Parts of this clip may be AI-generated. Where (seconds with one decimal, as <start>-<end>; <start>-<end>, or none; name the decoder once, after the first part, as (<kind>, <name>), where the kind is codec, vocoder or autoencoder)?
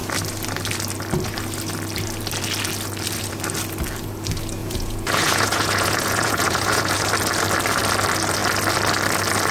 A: 4.6-7.0 (vocoder, Vocos)